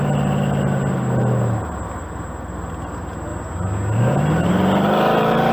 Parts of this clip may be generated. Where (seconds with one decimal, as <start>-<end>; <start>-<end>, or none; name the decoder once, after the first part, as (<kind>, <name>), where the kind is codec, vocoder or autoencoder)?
0.0-3.3 (vocoder, BigVGAN v2); 4.5-5.5